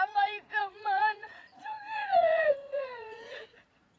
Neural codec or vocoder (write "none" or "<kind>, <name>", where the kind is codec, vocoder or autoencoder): vocoder, Vocos